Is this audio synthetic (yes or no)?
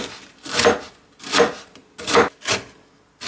no